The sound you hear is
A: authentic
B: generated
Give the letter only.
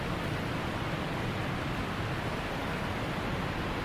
A